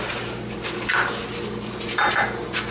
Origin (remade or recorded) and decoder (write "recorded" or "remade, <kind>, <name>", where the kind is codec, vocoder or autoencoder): recorded